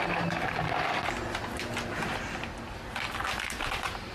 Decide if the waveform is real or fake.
real